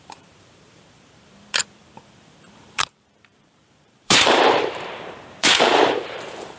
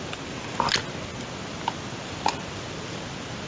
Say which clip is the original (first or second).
second